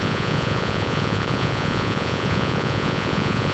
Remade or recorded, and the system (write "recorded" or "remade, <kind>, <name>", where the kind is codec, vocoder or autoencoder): remade, vocoder, Vocos